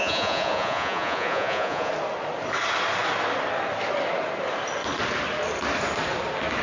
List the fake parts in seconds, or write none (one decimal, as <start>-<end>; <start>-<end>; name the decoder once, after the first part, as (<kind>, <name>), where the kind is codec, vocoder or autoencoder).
0.0-1.9 (vocoder, Vocos)